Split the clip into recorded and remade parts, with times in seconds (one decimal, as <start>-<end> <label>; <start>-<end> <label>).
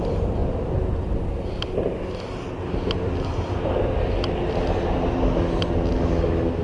0.0-6.6 recorded